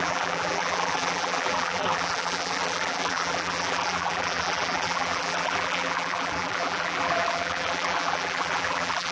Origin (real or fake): fake